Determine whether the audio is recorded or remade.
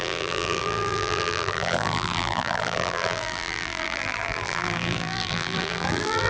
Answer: remade